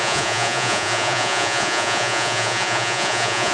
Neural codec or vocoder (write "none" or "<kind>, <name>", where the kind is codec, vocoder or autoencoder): vocoder, Vocos